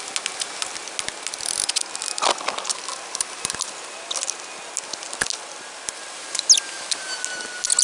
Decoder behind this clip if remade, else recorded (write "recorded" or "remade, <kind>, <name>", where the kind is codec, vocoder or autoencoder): recorded